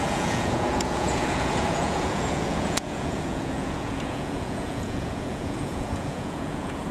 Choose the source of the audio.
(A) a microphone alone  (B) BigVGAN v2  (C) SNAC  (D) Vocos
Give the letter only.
D